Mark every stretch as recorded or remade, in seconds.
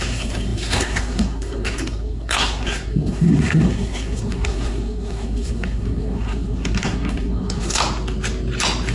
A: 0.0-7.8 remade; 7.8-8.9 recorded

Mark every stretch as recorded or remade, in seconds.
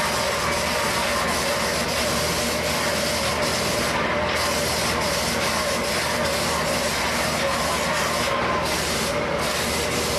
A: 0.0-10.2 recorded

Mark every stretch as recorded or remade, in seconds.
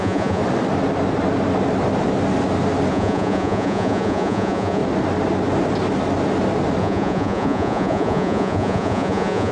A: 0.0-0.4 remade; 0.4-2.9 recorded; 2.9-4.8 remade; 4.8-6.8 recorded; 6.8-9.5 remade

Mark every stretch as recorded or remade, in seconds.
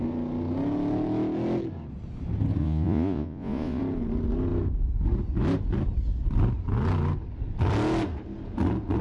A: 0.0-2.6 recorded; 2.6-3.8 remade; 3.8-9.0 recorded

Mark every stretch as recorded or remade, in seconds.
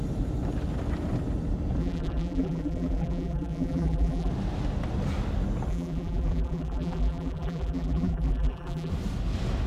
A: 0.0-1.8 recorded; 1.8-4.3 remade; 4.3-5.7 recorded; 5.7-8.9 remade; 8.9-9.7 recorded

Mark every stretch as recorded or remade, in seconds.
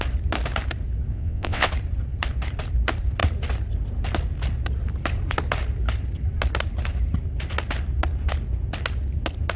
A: 0.0-1.1 recorded; 1.1-1.7 remade; 1.7-9.6 recorded